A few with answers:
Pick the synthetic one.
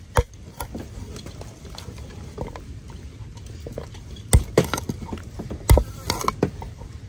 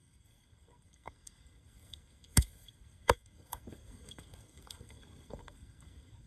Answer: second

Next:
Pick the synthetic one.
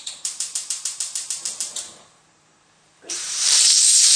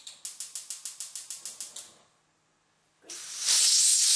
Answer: first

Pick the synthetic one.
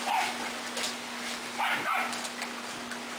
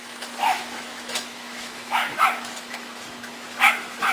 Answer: second